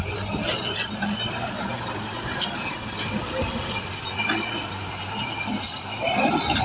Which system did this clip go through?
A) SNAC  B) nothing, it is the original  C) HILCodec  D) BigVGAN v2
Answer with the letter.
B